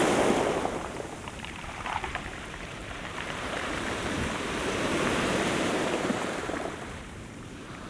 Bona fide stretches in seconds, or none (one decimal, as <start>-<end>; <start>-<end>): 0.0-1.1